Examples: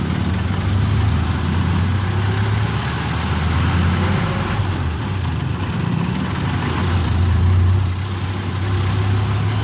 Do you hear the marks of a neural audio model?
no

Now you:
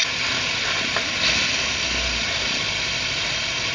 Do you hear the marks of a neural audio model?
no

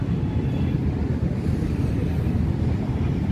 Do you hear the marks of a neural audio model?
no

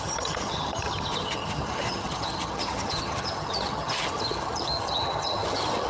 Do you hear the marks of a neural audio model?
yes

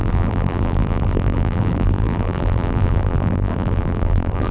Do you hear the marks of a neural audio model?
yes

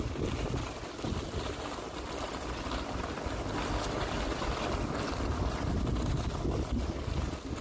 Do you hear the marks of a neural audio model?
no